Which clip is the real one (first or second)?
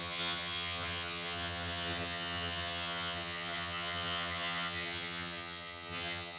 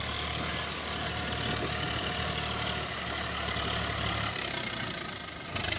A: second